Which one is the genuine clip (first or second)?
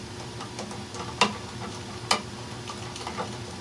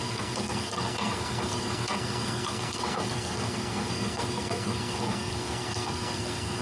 first